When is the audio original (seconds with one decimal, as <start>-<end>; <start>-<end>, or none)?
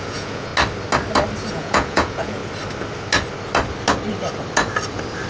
0.5-1.5; 2.4-5.3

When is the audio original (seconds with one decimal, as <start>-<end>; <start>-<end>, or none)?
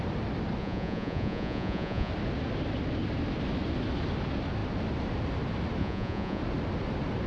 0.0-0.6; 2.1-5.8; 6.4-7.3